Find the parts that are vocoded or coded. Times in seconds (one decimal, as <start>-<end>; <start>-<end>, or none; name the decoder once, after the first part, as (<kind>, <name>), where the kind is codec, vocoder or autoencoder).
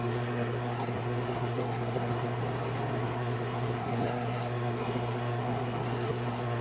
0.0-2.4 (codec, SNAC); 3.0-6.6